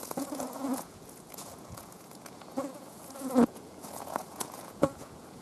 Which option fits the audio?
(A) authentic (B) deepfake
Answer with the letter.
B